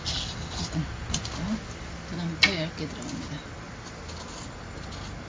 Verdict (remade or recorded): recorded